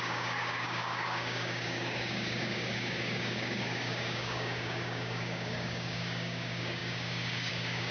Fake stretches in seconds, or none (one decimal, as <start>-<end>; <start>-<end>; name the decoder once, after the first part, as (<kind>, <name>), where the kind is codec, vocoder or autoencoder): 0.0-7.9 (codec, DAC)